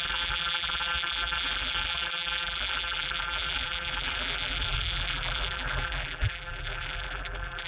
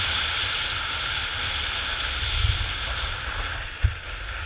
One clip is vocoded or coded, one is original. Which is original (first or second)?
second